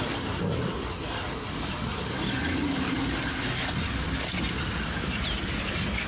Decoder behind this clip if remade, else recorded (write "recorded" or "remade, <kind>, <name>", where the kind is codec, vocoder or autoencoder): recorded